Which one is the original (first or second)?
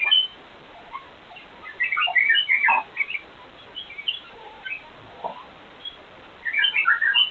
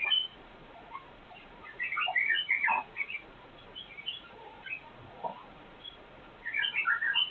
first